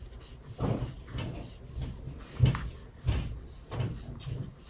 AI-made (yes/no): no